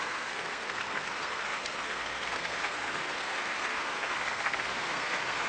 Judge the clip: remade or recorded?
remade